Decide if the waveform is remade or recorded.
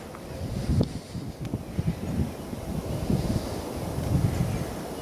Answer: recorded